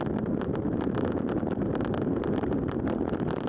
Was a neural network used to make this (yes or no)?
no